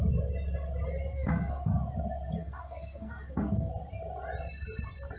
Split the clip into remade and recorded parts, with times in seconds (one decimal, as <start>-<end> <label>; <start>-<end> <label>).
0.0-1.1 recorded; 1.1-1.7 remade; 1.7-2.4 recorded; 2.4-3.7 remade; 3.7-5.2 recorded